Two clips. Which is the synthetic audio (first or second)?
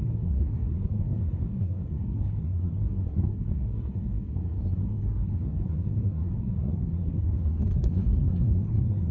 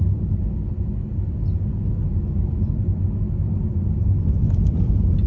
first